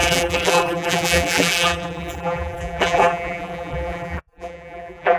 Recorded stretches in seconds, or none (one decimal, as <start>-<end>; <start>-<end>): none